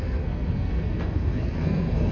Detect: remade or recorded remade